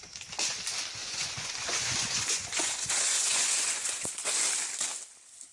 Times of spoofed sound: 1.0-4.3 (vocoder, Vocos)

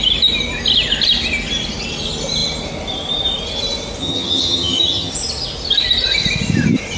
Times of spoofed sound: 4.0-5.1 (vocoder, HiFi-GAN)

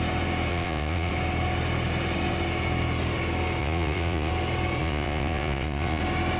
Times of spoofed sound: 0.5-1.1 (vocoder, Vocos); 3.6-4.3; 4.8-6.0

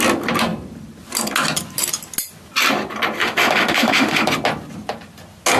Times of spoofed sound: 3.2-4.3 (autoencoder, DAC-VAE)

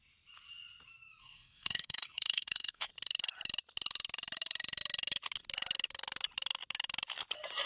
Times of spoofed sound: 1.2-2.9 (codec, SNAC)